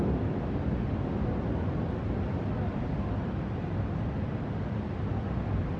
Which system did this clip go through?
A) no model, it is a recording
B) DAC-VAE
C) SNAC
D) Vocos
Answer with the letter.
A